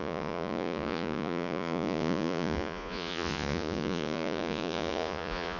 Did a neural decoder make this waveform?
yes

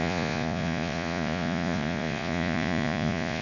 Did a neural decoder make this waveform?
yes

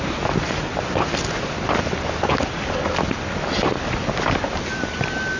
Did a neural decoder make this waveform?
no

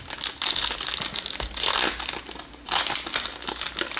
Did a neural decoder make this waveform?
no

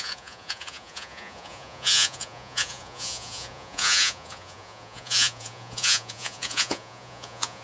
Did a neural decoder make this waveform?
yes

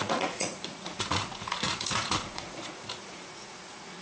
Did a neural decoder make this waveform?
yes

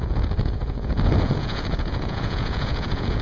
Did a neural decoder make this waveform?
yes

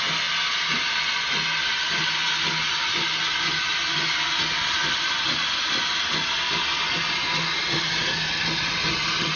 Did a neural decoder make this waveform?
no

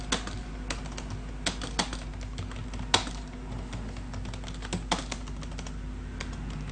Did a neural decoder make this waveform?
no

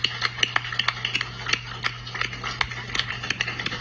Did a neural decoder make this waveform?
no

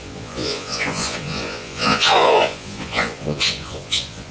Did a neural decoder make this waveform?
yes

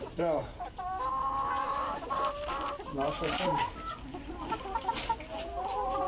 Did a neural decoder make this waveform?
no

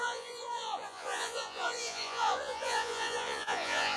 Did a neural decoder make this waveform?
yes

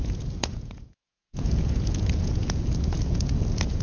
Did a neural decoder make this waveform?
yes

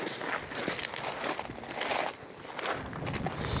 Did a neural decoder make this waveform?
no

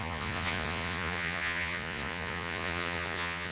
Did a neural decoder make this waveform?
yes